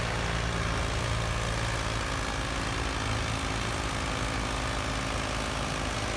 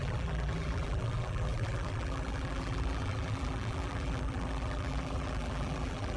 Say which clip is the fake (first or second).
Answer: second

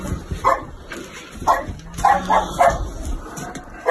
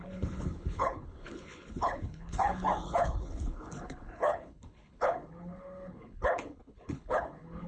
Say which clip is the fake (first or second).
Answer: second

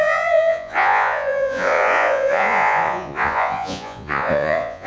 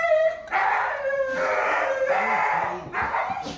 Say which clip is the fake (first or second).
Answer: first